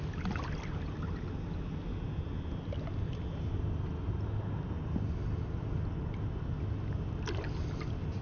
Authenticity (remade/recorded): recorded